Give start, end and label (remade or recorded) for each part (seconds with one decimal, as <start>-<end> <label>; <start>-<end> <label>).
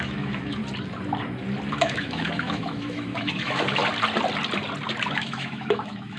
0.0-0.6 remade; 0.6-1.7 recorded; 1.7-3.8 remade; 3.8-5.1 recorded; 5.1-6.2 remade